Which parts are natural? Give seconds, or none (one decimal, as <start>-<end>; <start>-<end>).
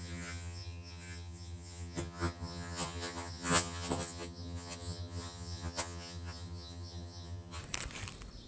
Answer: 7.6-8.5